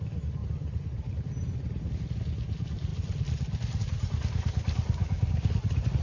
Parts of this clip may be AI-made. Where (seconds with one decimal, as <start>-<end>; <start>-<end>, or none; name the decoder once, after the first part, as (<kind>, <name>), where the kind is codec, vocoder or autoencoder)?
5.0-5.5 (codec, DAC)